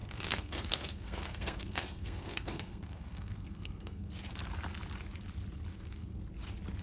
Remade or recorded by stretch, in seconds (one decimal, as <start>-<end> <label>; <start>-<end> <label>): 0.0-4.1 remade; 4.1-5.7 recorded; 5.7-6.2 remade; 6.2-6.8 recorded